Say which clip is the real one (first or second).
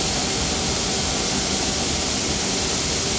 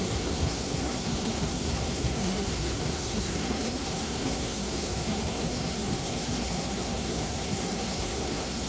first